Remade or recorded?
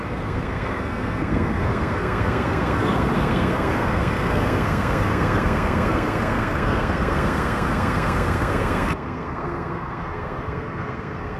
remade